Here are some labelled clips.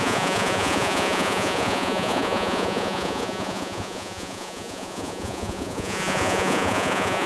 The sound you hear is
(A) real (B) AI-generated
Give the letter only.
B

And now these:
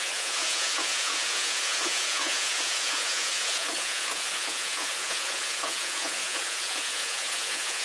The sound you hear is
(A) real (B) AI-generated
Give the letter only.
B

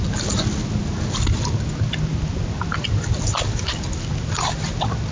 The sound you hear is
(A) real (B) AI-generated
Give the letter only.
A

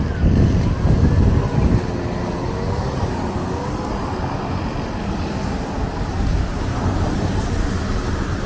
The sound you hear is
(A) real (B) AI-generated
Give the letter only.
A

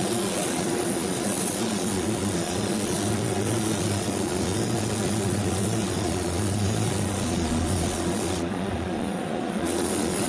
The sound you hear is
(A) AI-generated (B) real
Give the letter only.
A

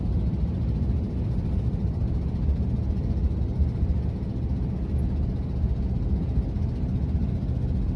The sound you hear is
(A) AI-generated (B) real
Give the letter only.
B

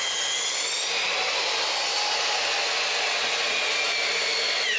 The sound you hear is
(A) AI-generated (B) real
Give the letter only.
B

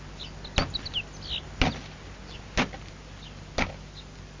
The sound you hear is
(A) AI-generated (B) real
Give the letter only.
B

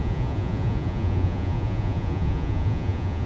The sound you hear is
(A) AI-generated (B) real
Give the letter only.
A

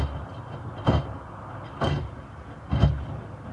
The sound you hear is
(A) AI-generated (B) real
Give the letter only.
B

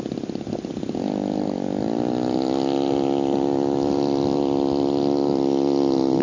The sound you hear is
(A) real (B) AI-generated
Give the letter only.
A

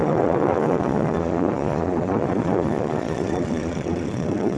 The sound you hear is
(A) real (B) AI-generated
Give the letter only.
B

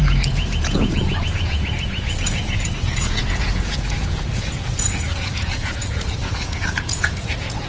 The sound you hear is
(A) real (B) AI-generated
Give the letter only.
B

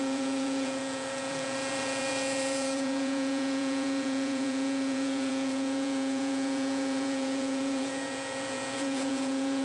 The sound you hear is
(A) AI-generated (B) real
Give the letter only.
A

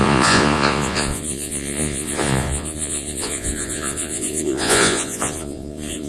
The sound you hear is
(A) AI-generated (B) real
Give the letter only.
A